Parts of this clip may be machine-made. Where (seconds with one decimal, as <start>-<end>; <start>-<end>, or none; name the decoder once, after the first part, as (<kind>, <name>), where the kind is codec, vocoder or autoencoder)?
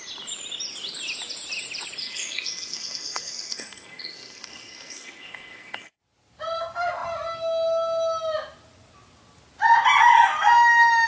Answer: 2.0-6.0 (codec, SNAC)